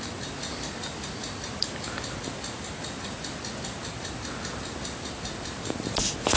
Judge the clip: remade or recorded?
recorded